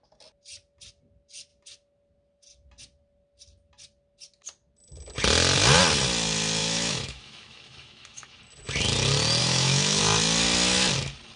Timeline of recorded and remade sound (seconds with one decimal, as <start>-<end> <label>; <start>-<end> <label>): 0.0-6.6 recorded; 6.6-8.4 remade; 8.4-9.4 recorded; 9.4-10.0 remade; 10.0-11.4 recorded